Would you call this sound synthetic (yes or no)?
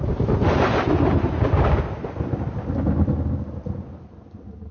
no